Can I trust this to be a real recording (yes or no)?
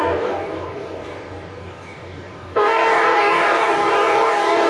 no